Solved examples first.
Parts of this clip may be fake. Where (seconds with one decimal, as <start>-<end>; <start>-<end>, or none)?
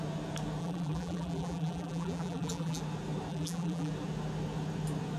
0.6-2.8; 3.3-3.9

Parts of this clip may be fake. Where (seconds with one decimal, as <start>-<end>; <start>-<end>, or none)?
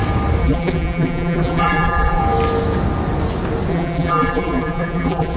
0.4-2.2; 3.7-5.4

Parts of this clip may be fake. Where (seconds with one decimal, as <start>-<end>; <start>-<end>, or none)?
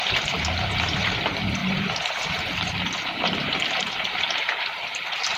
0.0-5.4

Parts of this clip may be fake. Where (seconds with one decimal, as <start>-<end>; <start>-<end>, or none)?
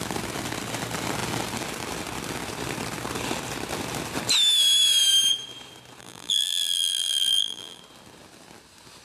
6.0-7.8